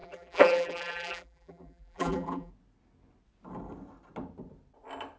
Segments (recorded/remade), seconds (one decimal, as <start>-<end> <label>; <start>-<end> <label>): 0.0-2.5 remade; 2.5-5.2 recorded